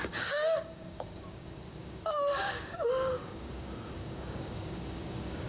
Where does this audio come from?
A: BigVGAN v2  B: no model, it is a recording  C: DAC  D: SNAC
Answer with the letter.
C